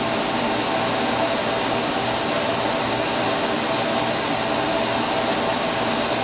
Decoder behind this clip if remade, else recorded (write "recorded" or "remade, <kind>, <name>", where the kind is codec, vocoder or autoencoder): recorded